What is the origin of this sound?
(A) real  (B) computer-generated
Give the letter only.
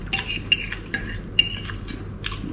A